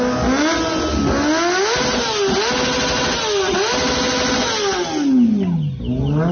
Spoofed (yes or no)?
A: no